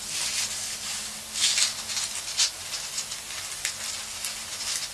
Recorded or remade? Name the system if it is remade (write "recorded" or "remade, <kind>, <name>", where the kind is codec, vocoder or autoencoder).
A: recorded